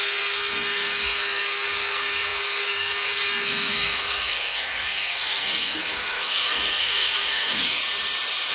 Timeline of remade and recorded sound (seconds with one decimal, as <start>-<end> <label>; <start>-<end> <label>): 0.0-7.8 remade; 7.8-8.5 recorded